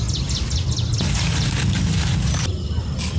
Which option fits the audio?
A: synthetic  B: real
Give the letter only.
B